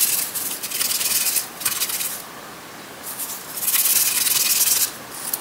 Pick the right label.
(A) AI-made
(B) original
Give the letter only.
B